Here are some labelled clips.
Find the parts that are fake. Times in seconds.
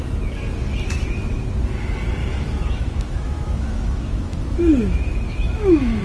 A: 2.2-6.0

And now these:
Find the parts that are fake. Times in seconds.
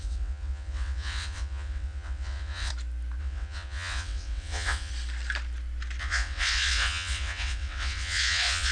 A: 0.0-2.7; 3.2-4.9; 6.0-8.7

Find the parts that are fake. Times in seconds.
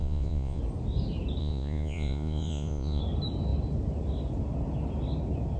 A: 0.0-0.6; 1.4-3.0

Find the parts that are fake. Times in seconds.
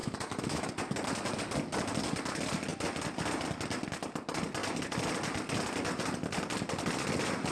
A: 0.0-0.7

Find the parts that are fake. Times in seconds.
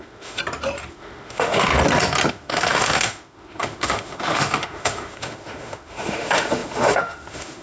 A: 0.0-0.4; 0.9-1.7; 2.3-7.6